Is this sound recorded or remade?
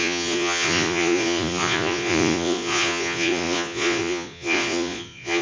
remade